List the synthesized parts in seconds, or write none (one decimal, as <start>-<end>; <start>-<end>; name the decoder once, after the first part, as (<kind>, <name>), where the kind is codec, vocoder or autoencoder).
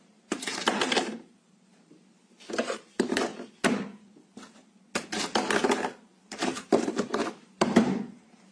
0.0-3.3 (vocoder, BigVGAN v2); 6.3-8.5